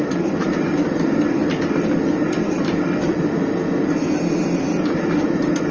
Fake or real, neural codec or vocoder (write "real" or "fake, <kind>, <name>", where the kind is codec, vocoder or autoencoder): real